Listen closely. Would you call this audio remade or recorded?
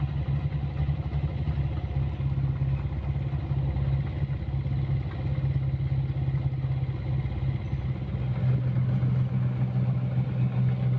recorded